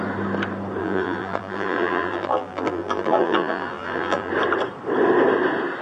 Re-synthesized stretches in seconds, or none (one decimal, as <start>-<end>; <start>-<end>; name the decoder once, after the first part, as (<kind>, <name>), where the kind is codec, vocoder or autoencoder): 0.8-4.3 (vocoder, BigVGAN v2)